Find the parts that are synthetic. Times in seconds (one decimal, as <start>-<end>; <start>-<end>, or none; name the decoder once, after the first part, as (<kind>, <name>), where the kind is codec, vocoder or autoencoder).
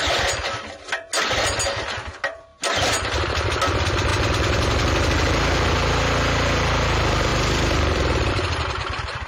7.3-8.3 (vocoder, BigVGAN v2)